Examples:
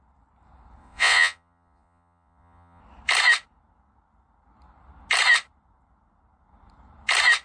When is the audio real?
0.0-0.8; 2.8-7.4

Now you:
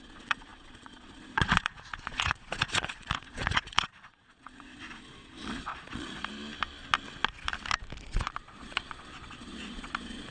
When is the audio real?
6.3-8.0

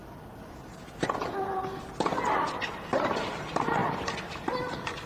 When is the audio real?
0.0-5.1

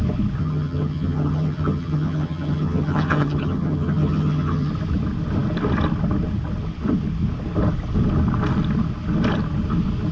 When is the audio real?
0.0-0.4; 4.7-10.1

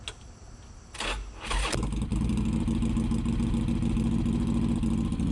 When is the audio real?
0.0-5.3

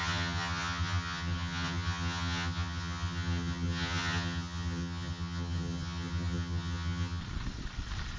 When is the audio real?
7.2-8.2

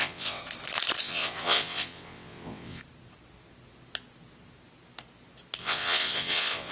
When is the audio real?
0.4-1.0; 2.8-5.6